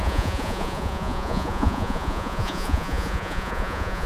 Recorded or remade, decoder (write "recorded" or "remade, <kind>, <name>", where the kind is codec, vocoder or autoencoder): remade, vocoder, Vocos